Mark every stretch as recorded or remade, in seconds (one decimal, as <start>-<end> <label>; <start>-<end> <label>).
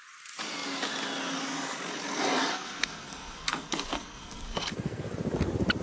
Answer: 0.0-2.5 recorded; 2.5-5.0 remade; 5.0-5.8 recorded